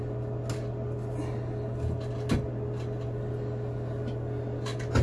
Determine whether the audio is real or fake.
real